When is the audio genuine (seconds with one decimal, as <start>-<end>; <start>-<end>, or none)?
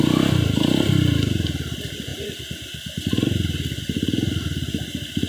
0.0-5.3